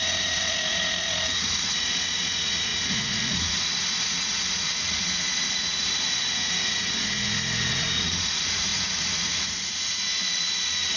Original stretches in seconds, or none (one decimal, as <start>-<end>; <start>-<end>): none